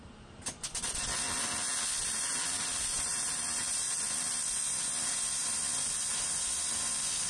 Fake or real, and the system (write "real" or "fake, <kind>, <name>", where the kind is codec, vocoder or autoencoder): real